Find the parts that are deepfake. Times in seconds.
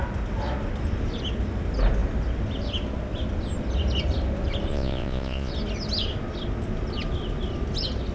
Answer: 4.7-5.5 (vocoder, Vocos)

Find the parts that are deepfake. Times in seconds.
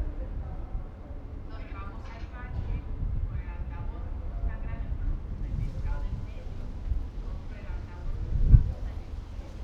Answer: 1.3-2.1 (vocoder, BigVGAN v2); 8.0-9.6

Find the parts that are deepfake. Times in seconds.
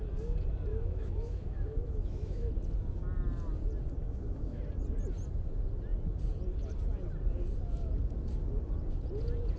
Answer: 0.7-2.5 (autoencoder, DAC-VAE); 4.0-4.6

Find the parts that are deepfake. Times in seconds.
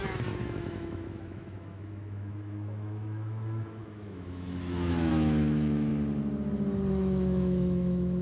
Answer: 0.0-5.9 (autoencoder, DAC-VAE); 6.9-8.2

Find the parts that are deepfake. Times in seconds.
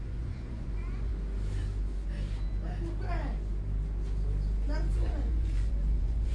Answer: 0.0-1.1 (vocoder, Vocos); 4.9-6.3